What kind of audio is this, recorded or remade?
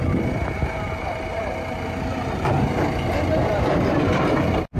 recorded